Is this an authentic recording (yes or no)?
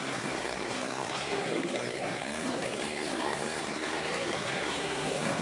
no